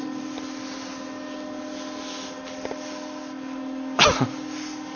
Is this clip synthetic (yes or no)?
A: no